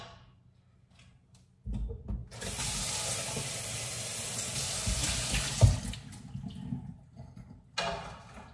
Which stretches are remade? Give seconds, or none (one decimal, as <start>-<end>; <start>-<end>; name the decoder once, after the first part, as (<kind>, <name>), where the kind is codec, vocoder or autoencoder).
none